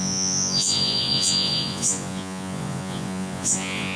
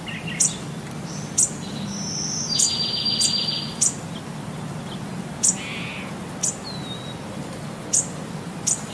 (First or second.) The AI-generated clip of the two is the first